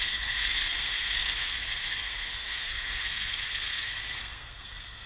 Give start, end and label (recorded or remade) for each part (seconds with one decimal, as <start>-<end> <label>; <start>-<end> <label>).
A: 0.0-5.1 remade